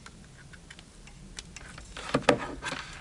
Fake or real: real